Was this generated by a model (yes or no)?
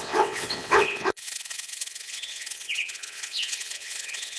yes